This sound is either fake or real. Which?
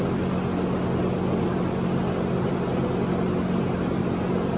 real